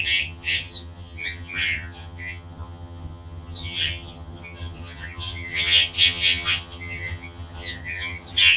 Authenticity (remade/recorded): remade